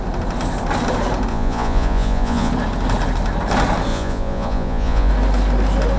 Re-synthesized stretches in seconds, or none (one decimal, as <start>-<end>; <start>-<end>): 1.3-2.5; 3.9-5.1